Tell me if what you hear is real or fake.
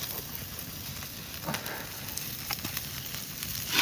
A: real